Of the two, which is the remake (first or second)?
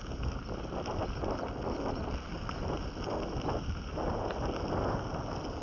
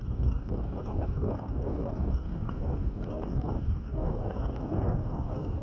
second